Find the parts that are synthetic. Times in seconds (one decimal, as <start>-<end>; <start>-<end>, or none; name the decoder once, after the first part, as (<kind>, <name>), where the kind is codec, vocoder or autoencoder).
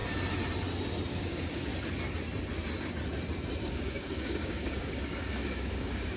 1.1-1.7 (codec, DAC); 3.7-6.2